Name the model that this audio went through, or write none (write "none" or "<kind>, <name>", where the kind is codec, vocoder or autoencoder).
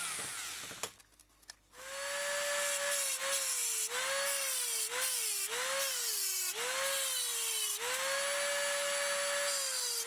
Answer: none